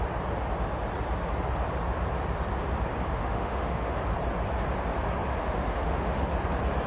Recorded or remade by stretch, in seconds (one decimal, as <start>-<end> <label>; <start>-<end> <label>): 0.0-3.1 recorded; 3.1-4.0 remade; 4.0-5.4 recorded; 5.4-6.3 remade; 6.3-6.9 recorded